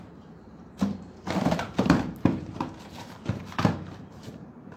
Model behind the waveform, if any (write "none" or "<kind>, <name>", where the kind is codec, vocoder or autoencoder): vocoder, BigVGAN v2